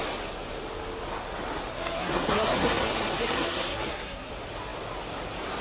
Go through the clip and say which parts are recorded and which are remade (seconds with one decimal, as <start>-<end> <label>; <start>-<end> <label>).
0.0-1.7 recorded; 1.7-4.3 remade; 4.3-5.6 recorded